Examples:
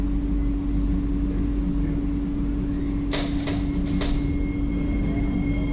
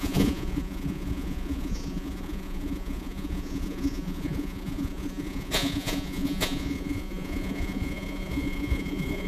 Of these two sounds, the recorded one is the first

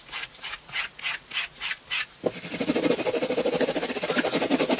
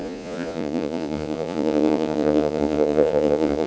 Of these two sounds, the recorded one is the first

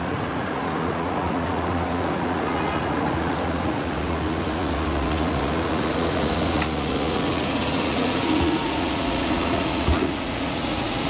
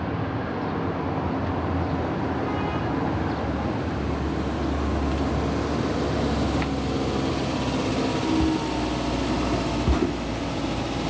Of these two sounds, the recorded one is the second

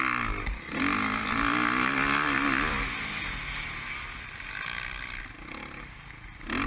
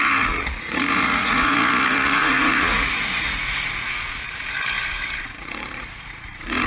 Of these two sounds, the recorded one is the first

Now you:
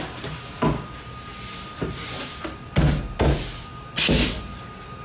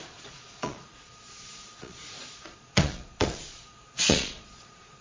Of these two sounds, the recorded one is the first